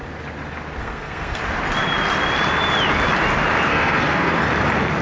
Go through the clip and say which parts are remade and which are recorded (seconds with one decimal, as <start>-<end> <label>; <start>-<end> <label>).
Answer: 0.0-0.8 recorded; 0.8-1.4 remade; 1.4-3.7 recorded; 3.7-4.4 remade; 4.4-5.0 recorded

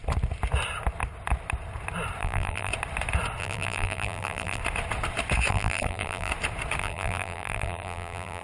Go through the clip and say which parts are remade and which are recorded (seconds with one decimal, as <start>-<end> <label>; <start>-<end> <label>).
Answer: 0.0-2.2 recorded; 2.2-2.7 remade; 2.7-3.4 recorded; 3.4-4.6 remade; 4.6-5.5 recorded; 5.5-6.3 remade; 6.3-6.8 recorded; 6.8-8.4 remade

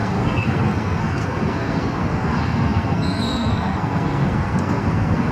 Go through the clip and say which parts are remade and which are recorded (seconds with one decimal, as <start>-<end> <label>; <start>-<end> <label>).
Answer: 0.0-5.3 remade

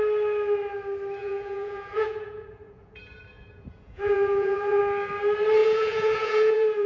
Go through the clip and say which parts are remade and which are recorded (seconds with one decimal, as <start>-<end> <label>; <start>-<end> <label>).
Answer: 0.0-1.2 recorded; 1.2-4.8 remade; 4.8-5.6 recorded; 5.6-6.9 remade

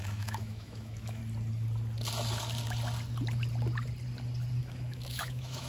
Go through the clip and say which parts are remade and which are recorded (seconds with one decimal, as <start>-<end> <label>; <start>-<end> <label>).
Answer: 0.0-1.2 remade; 1.2-4.6 recorded; 4.6-5.7 remade